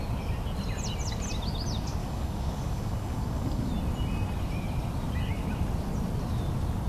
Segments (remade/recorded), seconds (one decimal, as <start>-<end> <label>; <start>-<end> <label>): 0.0-2.0 recorded; 2.0-3.7 remade; 3.7-6.9 recorded